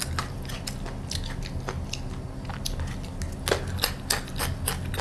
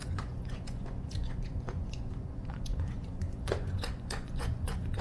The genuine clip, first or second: first